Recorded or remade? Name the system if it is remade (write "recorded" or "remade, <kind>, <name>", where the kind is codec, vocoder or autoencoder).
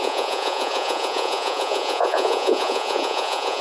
remade, vocoder, Vocos